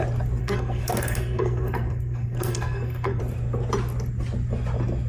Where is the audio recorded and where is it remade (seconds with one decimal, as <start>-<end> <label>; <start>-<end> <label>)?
0.0-0.4 recorded; 0.4-3.2 remade; 3.2-5.1 recorded